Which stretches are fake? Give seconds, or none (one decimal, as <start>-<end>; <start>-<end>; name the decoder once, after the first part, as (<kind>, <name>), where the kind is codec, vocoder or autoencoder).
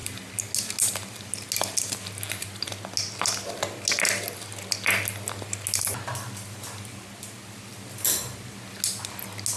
none